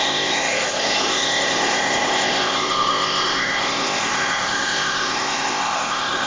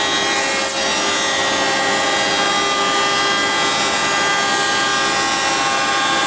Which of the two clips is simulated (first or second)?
first